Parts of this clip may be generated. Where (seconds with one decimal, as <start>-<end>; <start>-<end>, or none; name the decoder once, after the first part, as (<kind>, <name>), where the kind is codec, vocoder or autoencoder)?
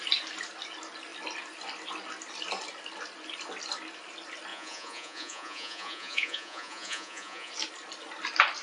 4.5-7.5 (vocoder, Vocos)